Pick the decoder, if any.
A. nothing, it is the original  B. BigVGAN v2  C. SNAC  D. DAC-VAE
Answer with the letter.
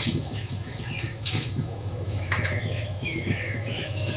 D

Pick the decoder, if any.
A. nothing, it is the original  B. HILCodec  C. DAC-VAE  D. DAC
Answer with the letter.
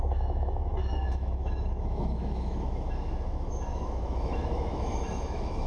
C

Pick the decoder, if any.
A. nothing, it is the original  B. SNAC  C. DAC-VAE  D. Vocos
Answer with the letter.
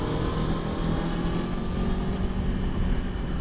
A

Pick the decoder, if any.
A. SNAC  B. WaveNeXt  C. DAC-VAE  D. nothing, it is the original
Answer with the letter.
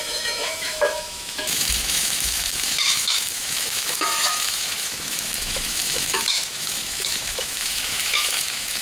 C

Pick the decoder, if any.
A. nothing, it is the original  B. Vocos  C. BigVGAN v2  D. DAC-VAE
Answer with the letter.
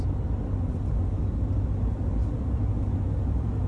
A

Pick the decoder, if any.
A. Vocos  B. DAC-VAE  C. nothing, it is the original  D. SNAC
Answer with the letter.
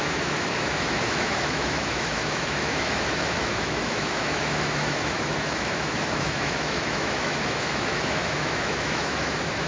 B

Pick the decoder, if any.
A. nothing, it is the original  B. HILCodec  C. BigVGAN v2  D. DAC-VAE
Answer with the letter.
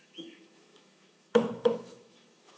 D